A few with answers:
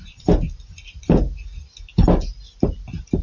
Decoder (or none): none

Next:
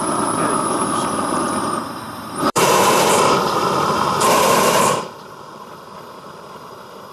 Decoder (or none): vocoder, BigVGAN v2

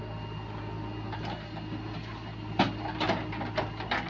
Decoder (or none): none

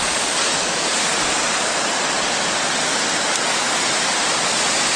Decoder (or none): none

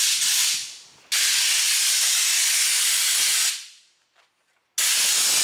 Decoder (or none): none